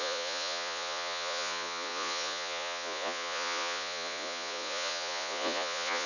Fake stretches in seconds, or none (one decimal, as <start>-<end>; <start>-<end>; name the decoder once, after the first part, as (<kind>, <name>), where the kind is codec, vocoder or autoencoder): 0.0-6.1 (vocoder, Vocos)